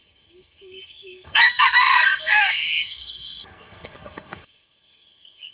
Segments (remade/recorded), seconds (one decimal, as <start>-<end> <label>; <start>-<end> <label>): 0.0-5.5 remade